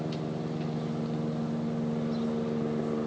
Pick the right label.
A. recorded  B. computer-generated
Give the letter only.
A